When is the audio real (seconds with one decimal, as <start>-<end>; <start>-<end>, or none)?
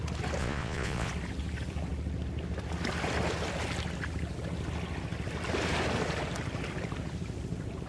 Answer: 0.0-0.4; 1.1-7.9